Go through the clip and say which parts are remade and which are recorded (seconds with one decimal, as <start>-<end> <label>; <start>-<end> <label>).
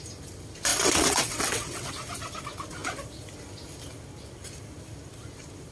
0.0-0.7 recorded; 0.7-1.9 remade; 1.9-5.7 recorded